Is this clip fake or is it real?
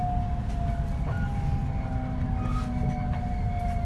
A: real